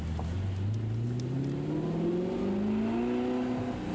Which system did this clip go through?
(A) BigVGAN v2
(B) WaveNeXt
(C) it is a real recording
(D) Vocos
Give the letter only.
C